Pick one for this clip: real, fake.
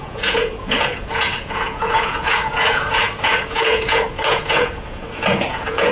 fake